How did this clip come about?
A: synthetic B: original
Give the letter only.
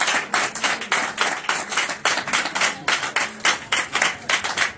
B